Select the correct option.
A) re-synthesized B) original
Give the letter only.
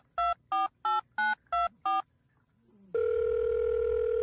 B